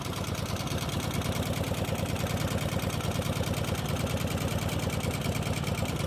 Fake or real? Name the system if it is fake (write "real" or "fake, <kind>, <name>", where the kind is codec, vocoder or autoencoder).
real